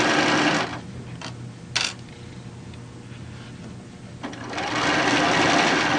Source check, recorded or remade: recorded